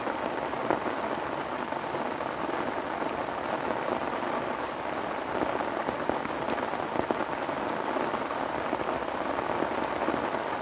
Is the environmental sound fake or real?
real